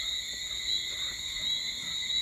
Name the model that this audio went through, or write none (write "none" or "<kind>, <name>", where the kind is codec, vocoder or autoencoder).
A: none